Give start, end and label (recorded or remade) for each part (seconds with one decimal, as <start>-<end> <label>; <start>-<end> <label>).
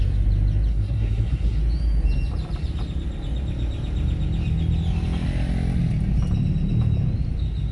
0.0-0.7 recorded; 0.7-1.6 remade; 1.6-7.7 recorded